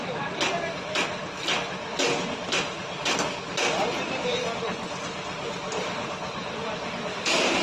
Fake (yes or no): no